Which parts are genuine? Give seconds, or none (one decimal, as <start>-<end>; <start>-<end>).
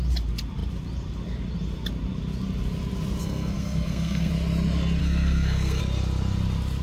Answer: 0.0-3.2; 4.3-5.0; 5.8-6.8